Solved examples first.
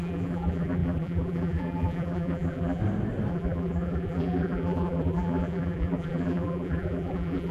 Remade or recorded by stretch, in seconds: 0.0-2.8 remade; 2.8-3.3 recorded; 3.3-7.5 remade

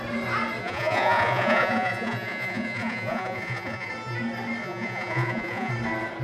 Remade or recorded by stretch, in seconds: 0.0-0.6 recorded; 0.6-3.9 remade; 3.9-4.6 recorded; 4.6-5.7 remade; 5.7-6.2 recorded

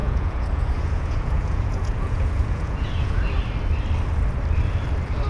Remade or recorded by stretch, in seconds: 0.0-3.2 remade; 3.2-5.3 recorded

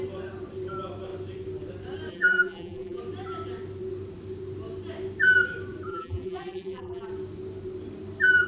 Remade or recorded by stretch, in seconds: 0.0-2.1 recorded; 2.1-3.0 remade; 3.0-5.9 recorded; 5.9-7.1 remade; 7.1-8.5 recorded

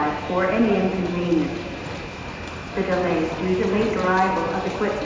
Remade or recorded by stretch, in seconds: 0.0-5.0 recorded

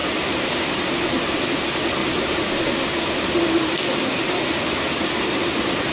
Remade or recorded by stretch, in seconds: 0.0-1.0 remade; 1.0-2.0 recorded; 2.0-2.6 remade; 2.6-5.9 recorded